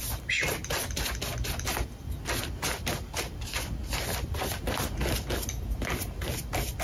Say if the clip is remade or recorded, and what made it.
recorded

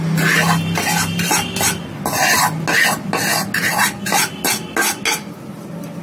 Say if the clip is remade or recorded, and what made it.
recorded